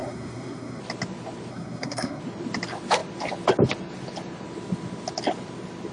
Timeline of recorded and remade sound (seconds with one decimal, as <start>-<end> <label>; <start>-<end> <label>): 0.0-0.8 remade; 0.8-1.5 recorded; 1.5-2.2 remade; 2.2-5.9 recorded